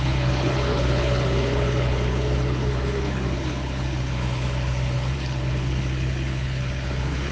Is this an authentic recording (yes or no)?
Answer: no